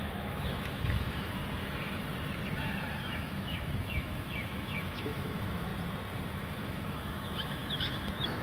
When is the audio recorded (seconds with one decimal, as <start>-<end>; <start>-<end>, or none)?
1.4-2.9; 5.7-6.3